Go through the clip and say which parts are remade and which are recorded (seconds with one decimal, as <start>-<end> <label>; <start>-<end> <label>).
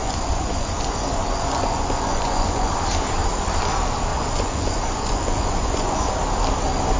0.0-2.7 remade; 2.7-4.1 recorded; 4.1-6.1 remade; 6.1-7.0 recorded